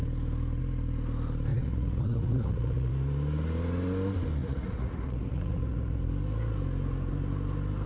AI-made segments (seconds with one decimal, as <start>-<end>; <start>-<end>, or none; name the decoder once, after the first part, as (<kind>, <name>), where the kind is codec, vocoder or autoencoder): 1.5-2.9 (vocoder, Vocos); 4.4-6.1